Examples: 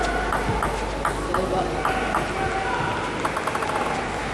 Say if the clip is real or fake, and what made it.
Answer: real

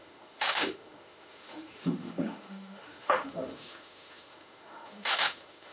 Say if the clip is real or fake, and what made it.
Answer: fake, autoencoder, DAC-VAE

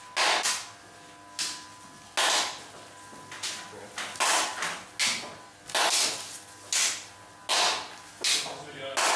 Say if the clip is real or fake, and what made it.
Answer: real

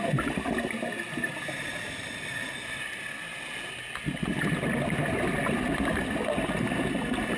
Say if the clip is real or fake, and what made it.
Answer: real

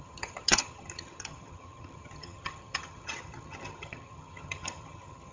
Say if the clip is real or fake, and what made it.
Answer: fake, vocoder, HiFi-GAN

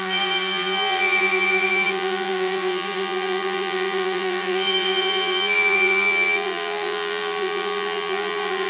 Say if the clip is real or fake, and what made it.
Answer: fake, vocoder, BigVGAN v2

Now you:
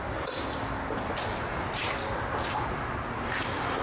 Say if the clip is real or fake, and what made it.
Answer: real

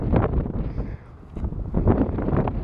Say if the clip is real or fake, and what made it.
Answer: real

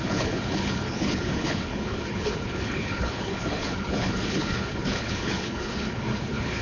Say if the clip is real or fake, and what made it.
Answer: fake, codec, HILCodec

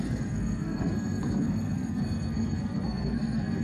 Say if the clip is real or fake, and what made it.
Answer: fake, codec, SNAC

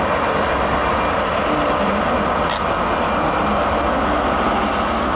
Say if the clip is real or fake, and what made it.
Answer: real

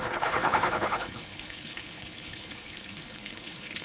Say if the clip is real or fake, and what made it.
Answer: fake, codec, HILCodec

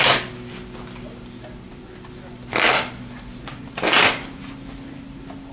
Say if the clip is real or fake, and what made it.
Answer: real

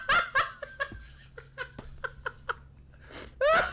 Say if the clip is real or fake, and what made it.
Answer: real